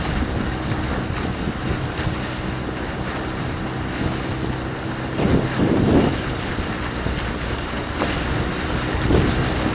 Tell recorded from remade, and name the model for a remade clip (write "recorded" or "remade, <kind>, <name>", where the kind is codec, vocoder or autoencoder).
recorded